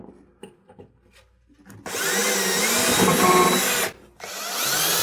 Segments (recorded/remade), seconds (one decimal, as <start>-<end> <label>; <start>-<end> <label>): 0.0-5.0 recorded